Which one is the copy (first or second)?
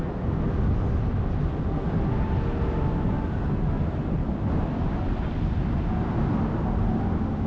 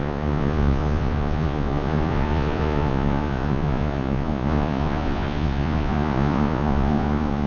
second